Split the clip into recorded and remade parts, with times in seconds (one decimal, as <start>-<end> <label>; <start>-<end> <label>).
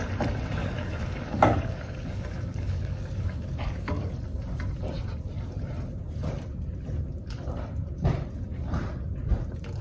0.0-0.6 recorded; 0.6-4.1 remade; 4.1-9.8 recorded